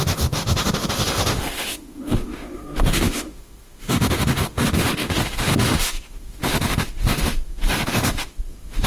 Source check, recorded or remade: remade